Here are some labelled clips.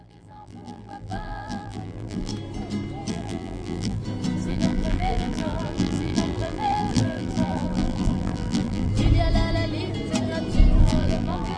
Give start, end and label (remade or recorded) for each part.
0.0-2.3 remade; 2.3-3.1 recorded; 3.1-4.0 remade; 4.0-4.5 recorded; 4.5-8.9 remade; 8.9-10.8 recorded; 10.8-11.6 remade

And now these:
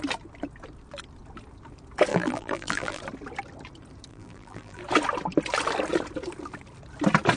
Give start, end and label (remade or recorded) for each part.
0.0-2.1 recorded; 2.1-3.0 remade; 3.0-4.1 recorded; 4.1-4.8 remade; 4.8-7.4 recorded

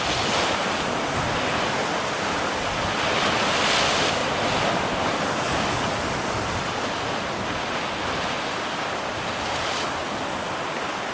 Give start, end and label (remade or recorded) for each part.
0.0-11.1 recorded

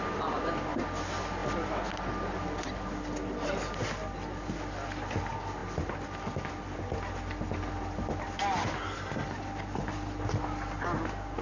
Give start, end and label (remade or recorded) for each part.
0.0-11.4 recorded

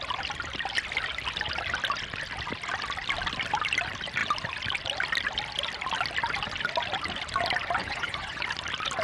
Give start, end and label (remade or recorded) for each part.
0.0-7.8 recorded; 7.8-8.4 remade; 8.4-9.0 recorded